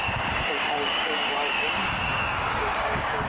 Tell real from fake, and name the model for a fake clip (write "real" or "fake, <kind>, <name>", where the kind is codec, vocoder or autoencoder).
fake, codec, DAC